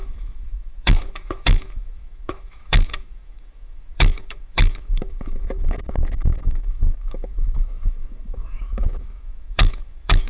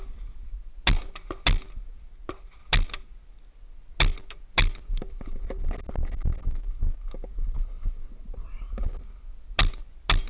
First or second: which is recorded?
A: second